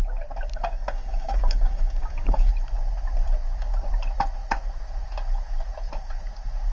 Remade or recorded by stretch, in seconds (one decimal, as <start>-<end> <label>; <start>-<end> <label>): 0.0-0.5 recorded; 0.5-2.5 remade; 2.5-6.7 recorded